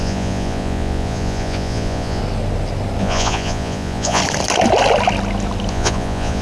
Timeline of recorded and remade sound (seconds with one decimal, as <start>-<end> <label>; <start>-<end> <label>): 0.0-2.2 remade; 2.2-3.0 recorded; 3.0-4.2 remade; 4.2-5.7 recorded; 5.7-6.4 remade